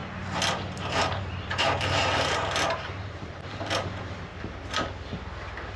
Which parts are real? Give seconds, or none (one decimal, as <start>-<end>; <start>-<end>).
0.0-0.8; 4.3-5.8